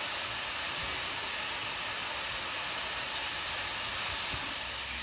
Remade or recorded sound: recorded